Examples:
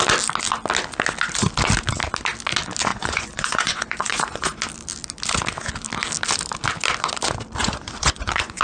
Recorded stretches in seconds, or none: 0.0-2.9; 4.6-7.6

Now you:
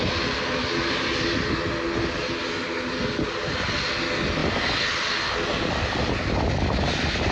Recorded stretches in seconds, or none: 0.0-7.3

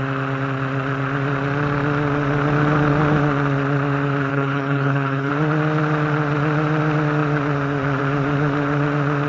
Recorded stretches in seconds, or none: 0.0-4.3; 5.3-9.3

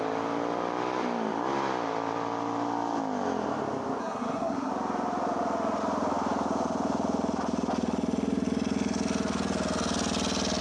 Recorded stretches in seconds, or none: 0.0-4.0; 4.7-10.6

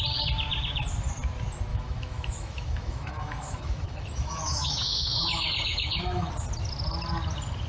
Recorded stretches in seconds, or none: 0.0-1.7; 6.3-7.7

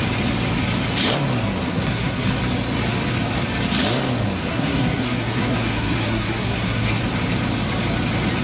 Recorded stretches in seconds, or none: 0.0-1.7; 2.4-4.5; 7.0-8.4

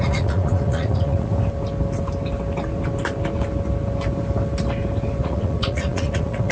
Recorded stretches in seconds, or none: 1.3-5.2

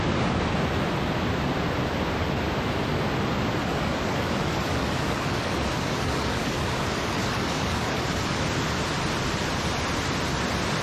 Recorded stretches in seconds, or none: 0.0-3.6; 8.4-10.8